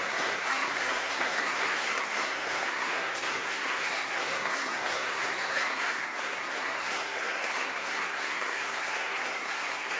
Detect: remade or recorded remade